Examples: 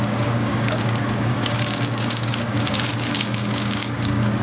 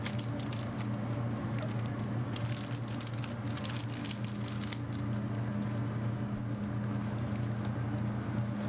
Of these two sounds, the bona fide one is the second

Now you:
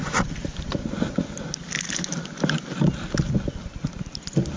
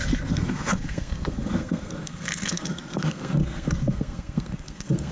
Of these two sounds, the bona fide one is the first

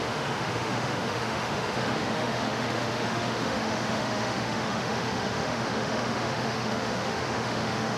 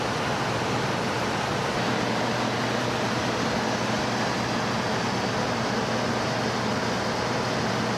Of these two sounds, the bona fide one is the second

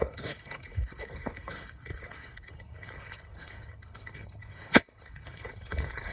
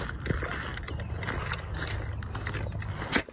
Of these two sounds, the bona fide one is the second